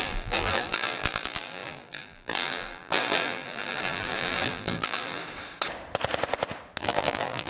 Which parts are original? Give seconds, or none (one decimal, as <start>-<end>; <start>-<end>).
5.2-6.8